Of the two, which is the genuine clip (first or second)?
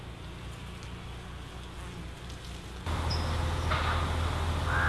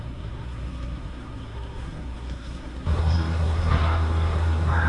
first